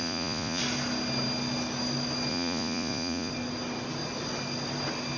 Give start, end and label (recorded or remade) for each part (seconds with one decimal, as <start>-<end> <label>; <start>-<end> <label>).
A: 0.0-0.6 remade; 0.6-2.3 recorded; 2.3-3.3 remade; 3.3-5.2 recorded